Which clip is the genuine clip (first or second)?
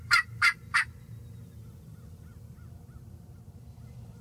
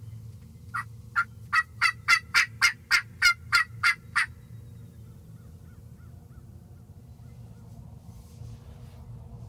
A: second